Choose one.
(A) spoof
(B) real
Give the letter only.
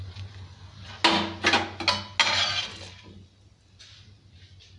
B